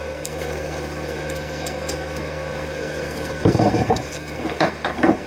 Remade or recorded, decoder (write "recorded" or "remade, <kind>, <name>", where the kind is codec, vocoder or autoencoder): remade, codec, SNAC